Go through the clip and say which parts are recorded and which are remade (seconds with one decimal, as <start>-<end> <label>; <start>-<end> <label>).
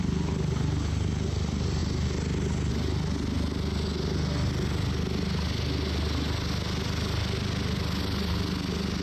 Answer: 0.0-9.0 recorded